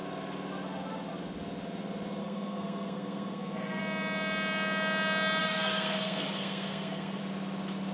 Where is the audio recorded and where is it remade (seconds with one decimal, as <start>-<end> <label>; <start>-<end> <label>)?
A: 0.0-2.2 recorded; 2.2-3.8 remade; 3.8-5.4 recorded; 5.4-7.2 remade; 7.2-7.9 recorded